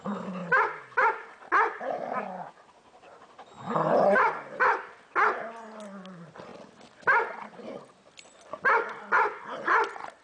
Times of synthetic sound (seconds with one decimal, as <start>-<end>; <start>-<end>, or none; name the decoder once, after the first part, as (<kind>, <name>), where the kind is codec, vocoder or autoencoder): none

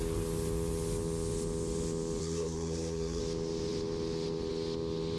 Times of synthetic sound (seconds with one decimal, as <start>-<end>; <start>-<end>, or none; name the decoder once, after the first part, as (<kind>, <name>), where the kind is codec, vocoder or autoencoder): 2.2-3.2 (codec, SNAC)

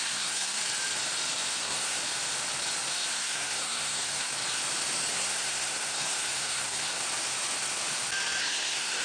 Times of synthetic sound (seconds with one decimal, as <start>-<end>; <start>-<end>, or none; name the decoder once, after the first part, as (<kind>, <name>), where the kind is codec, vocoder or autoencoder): 0.0-0.6 (codec, SNAC); 1.6-2.0; 3.1-4.3; 5.1-7.0; 8.4-9.0